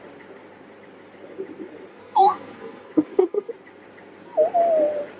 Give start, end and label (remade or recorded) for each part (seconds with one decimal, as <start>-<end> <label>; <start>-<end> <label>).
0.0-1.9 recorded; 1.9-3.5 remade; 3.5-5.2 recorded